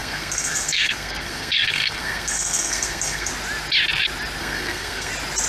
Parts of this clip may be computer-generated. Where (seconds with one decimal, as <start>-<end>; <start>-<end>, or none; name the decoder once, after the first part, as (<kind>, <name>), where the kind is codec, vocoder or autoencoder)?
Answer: 0.0-3.3 (codec, SNAC); 4.4-5.1